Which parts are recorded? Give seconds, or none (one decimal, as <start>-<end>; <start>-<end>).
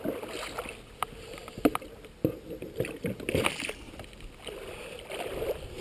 0.0-5.8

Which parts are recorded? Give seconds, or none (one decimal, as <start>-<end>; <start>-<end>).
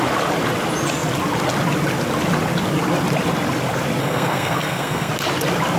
0.0-4.0; 5.1-5.8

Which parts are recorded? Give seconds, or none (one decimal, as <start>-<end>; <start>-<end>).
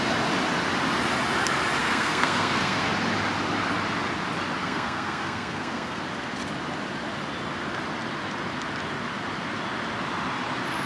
0.0-1.8; 2.8-4.6; 6.0-10.9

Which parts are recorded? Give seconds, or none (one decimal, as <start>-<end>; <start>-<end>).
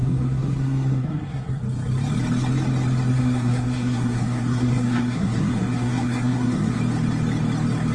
1.6-3.1; 6.8-7.9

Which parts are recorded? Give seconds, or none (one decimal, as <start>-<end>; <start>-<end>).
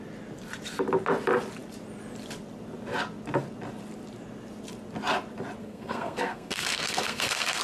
0.0-5.6